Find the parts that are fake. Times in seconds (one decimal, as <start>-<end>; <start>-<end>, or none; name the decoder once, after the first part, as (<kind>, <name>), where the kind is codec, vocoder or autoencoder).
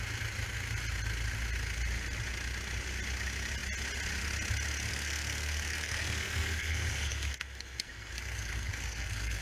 4.9-9.4 (codec, SNAC)